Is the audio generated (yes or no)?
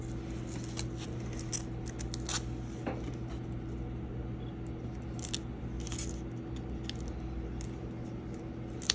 no